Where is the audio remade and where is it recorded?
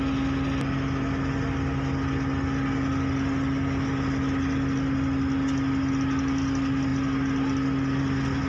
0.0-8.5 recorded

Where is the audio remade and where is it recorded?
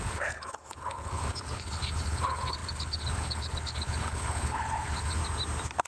0.0-5.2 remade; 5.2-5.9 recorded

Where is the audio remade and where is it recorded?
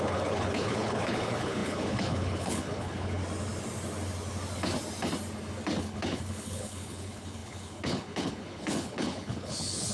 0.0-3.2 remade; 3.2-5.8 recorded; 5.8-9.9 remade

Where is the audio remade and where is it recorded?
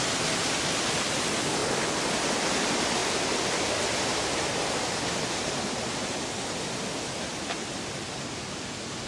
0.0-9.1 recorded